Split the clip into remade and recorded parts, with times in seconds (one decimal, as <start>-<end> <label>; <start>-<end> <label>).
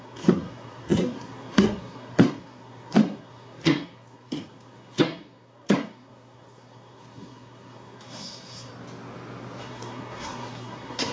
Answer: 0.0-8.7 remade; 8.7-9.6 recorded; 9.6-11.1 remade